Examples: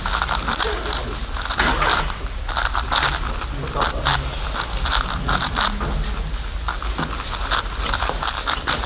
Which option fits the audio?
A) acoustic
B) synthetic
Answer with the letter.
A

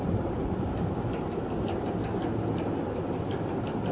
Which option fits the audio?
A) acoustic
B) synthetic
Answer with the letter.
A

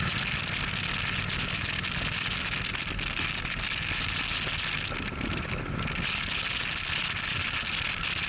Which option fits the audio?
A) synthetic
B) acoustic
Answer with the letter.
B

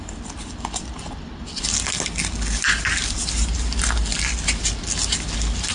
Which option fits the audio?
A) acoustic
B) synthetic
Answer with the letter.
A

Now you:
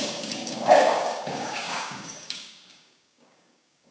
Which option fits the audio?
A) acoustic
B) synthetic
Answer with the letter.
B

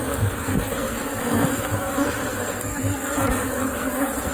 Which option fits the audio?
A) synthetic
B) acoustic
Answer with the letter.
A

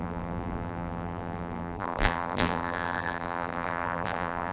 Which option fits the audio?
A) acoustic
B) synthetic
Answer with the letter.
B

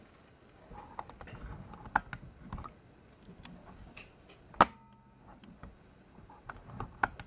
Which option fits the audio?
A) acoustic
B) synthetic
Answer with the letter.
A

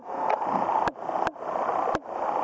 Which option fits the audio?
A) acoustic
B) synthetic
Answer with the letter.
A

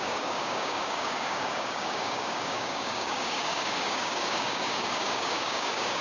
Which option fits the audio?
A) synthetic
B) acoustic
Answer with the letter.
A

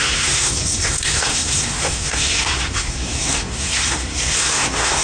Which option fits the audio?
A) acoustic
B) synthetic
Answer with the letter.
B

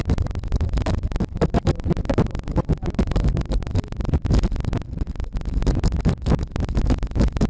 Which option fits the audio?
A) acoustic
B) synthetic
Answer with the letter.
A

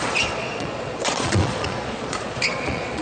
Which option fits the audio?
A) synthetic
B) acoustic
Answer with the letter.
A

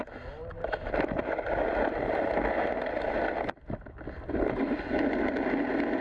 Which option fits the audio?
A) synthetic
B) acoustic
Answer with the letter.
B